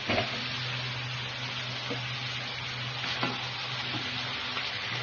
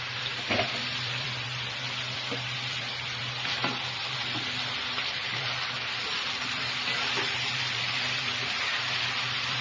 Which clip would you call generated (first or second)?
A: second